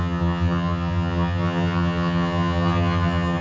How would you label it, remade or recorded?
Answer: remade